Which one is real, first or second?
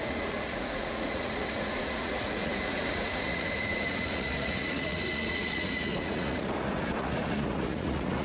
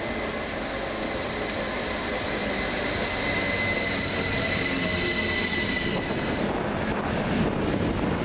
second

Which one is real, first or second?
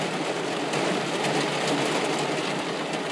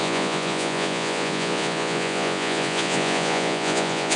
first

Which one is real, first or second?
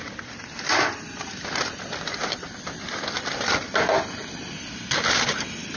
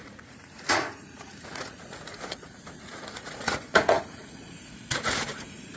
first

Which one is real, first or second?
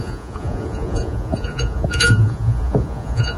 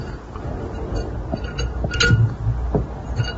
second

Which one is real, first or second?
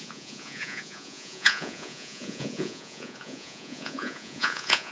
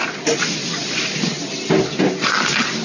second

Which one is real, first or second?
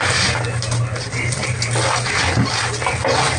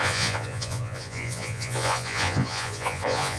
first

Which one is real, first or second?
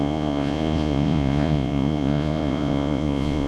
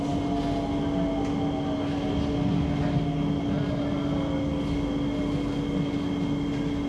second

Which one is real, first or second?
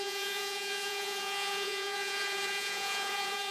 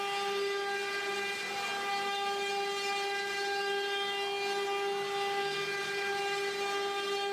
second